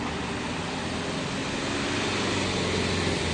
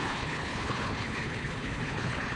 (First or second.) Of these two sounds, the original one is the first